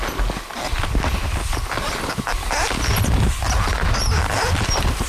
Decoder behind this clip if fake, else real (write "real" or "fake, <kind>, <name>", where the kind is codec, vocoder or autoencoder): real